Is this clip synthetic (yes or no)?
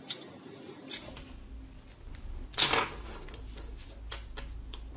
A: no